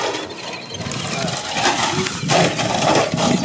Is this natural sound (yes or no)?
yes